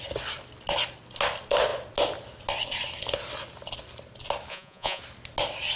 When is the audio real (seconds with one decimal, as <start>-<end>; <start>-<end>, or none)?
0.0-4.5; 5.0-5.8